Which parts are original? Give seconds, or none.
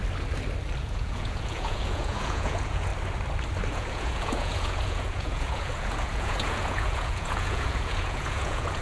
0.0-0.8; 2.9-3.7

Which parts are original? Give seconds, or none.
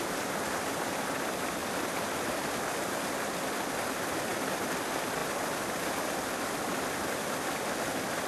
0.0-8.3